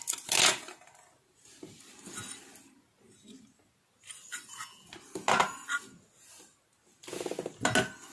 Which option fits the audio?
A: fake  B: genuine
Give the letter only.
B